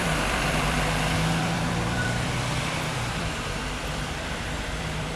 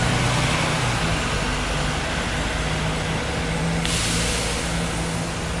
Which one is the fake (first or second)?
first